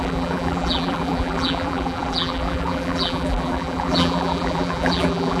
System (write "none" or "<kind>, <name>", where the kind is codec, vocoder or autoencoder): vocoder, BigVGAN v2